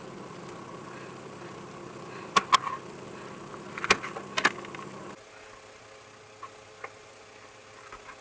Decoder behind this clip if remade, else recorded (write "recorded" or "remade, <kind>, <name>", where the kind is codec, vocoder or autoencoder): recorded